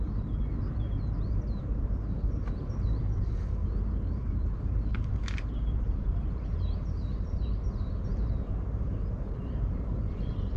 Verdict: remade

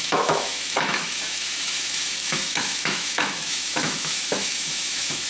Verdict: remade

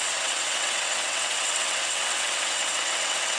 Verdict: remade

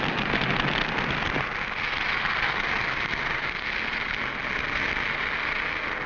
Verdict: recorded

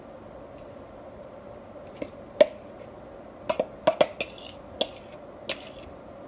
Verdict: recorded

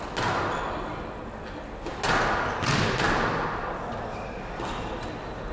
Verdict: recorded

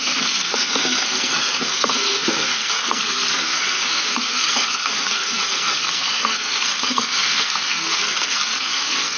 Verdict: remade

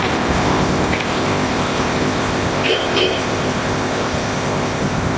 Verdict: remade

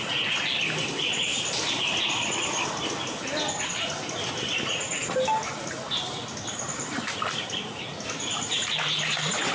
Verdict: recorded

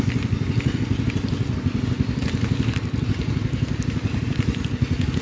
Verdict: recorded